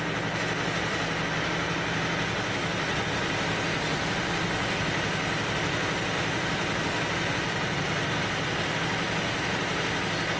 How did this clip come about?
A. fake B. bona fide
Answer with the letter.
B